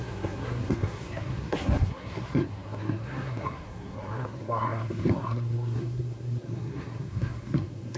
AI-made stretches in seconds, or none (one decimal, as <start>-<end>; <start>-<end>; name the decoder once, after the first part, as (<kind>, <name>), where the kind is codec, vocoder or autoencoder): 0.0-8.0 (codec, SNAC)